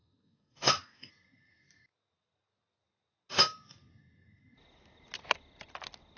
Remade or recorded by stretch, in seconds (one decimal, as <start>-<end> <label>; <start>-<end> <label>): 0.0-1.1 remade; 1.1-6.2 recorded